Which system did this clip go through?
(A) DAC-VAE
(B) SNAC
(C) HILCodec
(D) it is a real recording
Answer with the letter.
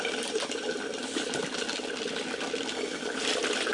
D